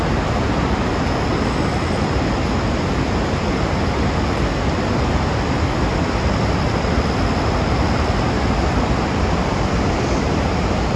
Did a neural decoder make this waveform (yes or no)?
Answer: no